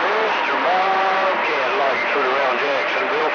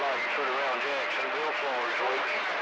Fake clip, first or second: first